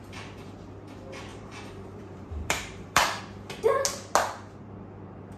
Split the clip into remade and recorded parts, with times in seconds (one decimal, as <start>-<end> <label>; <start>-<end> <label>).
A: 0.0-1.3 recorded; 1.3-3.2 remade; 3.2-5.4 recorded